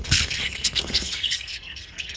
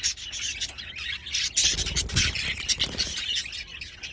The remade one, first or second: first